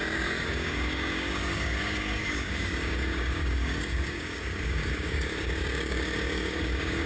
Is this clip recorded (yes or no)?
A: no